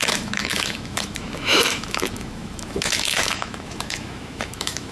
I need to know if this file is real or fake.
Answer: fake